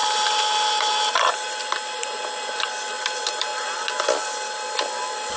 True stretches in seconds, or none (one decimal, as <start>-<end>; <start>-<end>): 0.0-5.4